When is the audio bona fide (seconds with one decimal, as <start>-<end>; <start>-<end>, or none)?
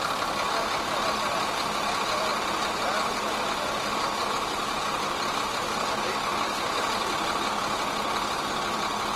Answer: 0.0-9.2